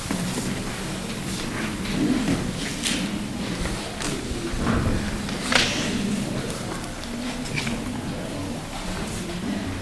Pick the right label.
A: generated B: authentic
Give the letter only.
B